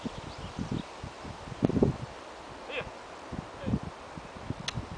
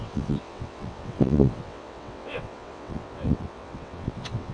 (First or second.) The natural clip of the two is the first